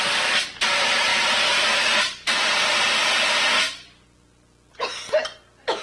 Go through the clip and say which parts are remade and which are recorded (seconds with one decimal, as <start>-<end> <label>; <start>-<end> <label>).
0.0-1.1 recorded; 1.1-3.0 remade; 3.0-5.8 recorded